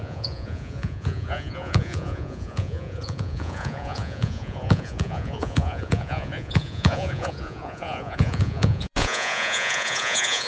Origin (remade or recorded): remade